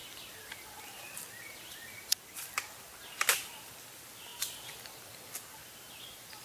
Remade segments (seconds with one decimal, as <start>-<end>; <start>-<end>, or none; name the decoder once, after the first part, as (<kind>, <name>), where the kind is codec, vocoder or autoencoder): 0.0-4.3 (vocoder, BigVGAN v2)